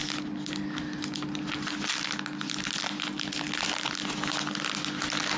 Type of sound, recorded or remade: recorded